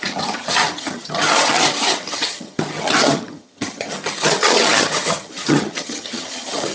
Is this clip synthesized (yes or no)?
yes